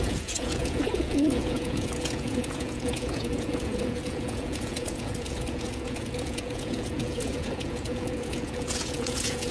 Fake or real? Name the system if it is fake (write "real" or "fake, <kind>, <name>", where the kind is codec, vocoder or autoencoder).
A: fake, vocoder, Vocos